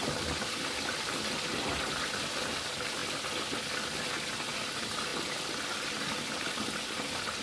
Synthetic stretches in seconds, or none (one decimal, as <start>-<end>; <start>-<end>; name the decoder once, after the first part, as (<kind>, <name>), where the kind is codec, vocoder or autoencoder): none